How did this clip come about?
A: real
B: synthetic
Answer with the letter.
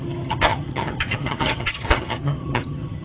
B